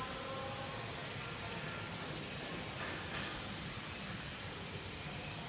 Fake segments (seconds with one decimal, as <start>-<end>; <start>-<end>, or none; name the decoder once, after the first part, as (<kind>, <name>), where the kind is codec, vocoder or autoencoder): none